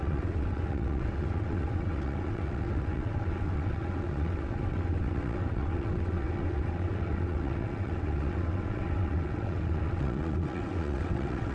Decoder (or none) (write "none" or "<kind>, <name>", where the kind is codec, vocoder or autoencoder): vocoder, WaveNeXt